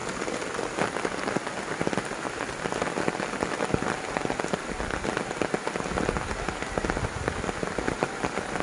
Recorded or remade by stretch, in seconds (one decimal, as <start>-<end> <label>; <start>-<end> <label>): 0.0-8.6 recorded